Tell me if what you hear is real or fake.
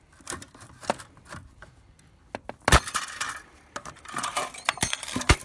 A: real